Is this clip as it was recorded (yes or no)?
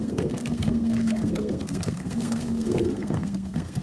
no